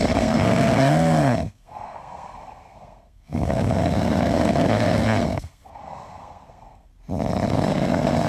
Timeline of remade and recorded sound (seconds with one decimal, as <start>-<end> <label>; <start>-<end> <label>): 0.0-6.9 remade; 6.9-7.5 recorded; 7.5-8.3 remade